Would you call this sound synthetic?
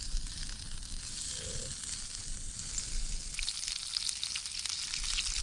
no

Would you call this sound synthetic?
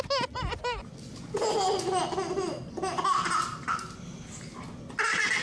no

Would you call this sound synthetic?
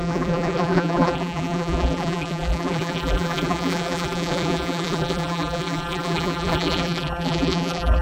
yes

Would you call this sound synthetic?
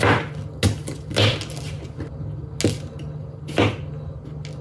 no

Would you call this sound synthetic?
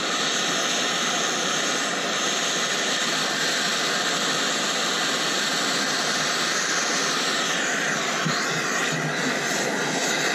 no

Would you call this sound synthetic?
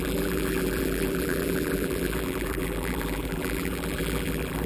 yes